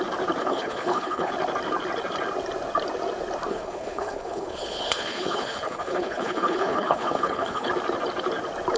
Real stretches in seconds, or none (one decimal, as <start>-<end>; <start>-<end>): 0.0-0.4; 1.3-3.5; 7.7-8.8